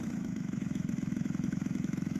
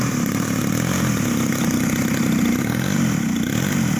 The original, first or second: second